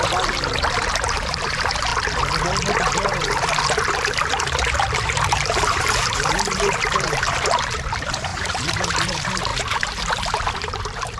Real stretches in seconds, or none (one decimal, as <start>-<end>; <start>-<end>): 1.9-2.8